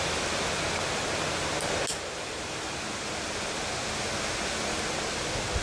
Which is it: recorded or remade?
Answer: recorded